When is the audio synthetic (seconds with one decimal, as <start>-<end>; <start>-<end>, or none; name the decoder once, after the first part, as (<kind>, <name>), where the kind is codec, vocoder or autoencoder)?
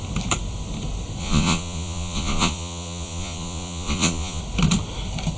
1.2-4.4 (vocoder, Vocos)